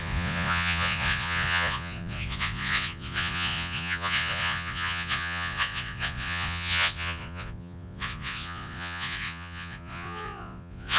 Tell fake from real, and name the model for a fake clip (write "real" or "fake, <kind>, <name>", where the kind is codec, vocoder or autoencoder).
fake, vocoder, Vocos